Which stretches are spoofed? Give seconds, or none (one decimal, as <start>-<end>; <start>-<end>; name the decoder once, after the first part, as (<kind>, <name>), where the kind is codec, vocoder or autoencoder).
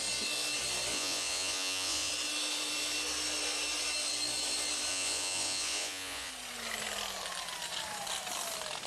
0.9-2.1 (vocoder, Vocos); 4.9-6.3